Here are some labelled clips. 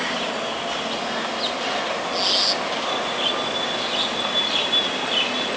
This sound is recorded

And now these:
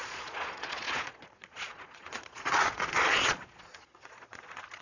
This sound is remade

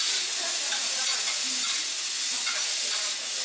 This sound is remade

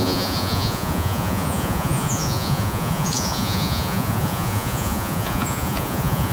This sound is remade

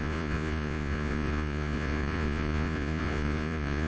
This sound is remade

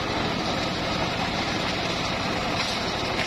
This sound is recorded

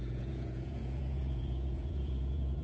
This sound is remade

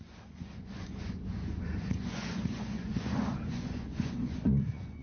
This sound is remade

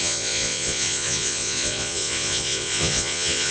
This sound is remade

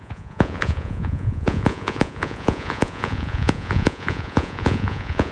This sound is remade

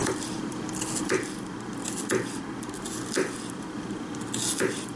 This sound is recorded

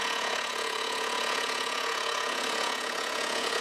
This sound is remade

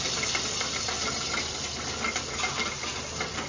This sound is recorded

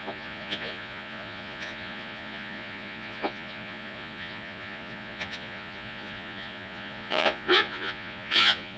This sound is remade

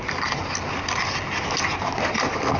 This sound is recorded